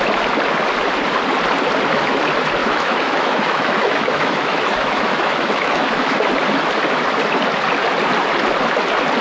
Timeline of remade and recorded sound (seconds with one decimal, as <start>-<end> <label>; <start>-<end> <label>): 0.0-2.6 recorded; 2.6-6.3 remade; 6.3-9.2 recorded